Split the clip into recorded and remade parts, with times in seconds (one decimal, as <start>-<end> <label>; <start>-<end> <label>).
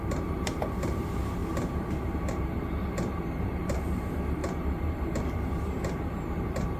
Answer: 0.0-6.8 remade